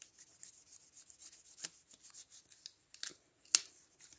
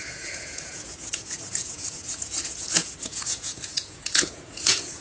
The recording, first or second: first